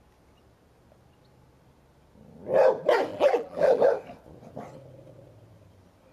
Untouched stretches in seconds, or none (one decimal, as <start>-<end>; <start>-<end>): 0.0-3.1; 3.8-6.1